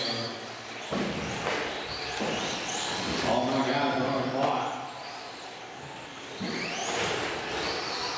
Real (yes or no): yes